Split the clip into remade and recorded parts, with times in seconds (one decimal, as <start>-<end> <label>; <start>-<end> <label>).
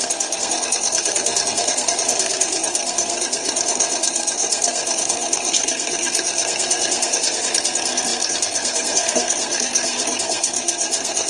0.0-11.3 remade